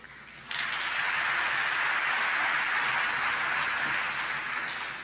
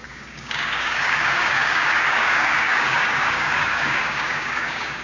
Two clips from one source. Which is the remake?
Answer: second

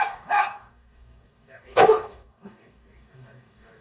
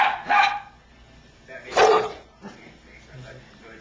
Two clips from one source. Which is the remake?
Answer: first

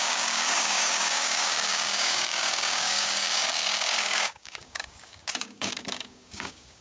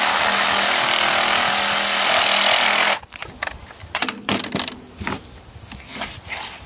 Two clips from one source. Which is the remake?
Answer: first